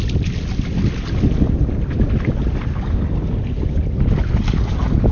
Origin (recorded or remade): recorded